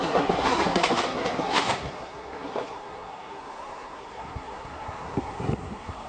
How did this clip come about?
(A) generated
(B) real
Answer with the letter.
A